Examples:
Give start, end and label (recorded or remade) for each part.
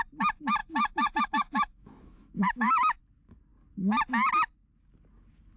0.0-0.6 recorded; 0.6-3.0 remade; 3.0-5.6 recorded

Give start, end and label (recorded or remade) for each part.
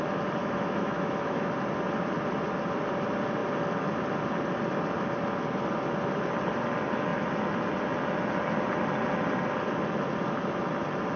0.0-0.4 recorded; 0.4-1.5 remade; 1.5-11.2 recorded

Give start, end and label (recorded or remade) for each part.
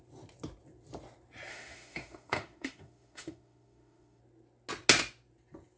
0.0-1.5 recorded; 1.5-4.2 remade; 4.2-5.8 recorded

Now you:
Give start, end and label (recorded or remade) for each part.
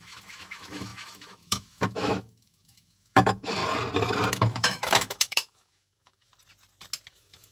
0.0-3.6 remade; 3.6-4.3 recorded; 4.3-6.3 remade; 6.3-7.1 recorded; 7.1-7.5 remade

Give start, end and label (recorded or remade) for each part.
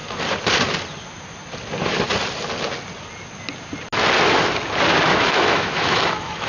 0.0-5.1 recorded; 5.1-6.5 remade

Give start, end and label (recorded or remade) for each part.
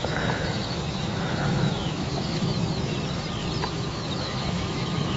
0.0-2.9 remade; 2.9-3.7 recorded; 3.7-5.2 remade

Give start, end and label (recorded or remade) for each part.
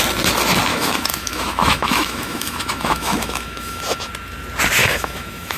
0.0-0.7 recorded; 0.7-4.1 remade; 4.1-4.8 recorded; 4.8-5.6 remade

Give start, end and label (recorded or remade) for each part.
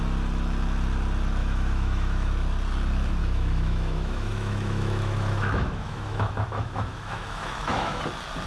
0.0-1.4 recorded; 1.4-2.3 remade; 2.3-3.2 recorded; 3.2-8.0 remade; 8.0-8.5 recorded